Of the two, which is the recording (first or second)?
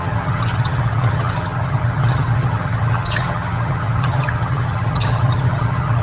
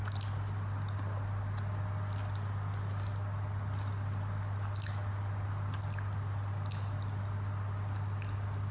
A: second